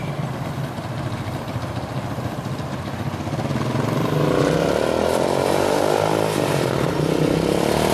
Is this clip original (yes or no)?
yes